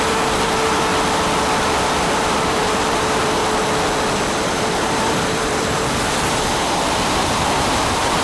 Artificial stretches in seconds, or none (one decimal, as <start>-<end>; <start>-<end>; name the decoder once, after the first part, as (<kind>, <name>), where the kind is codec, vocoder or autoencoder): 0.0-0.9 (vocoder, BigVGAN v2); 2.2-3.4; 4.5-8.2